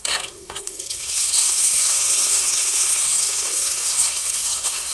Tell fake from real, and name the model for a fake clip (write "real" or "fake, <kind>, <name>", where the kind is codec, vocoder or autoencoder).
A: fake, codec, SNAC